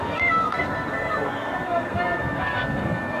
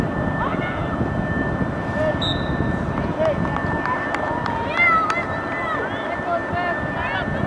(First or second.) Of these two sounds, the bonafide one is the second